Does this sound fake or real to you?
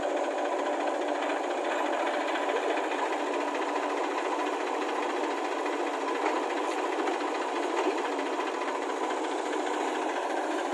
real